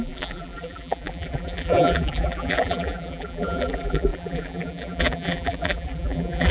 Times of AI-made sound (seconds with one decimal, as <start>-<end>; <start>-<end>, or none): 0.0-6.5